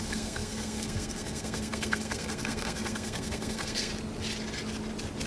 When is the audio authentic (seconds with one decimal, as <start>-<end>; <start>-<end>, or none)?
3.9-5.3